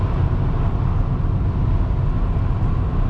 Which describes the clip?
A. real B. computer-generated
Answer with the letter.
A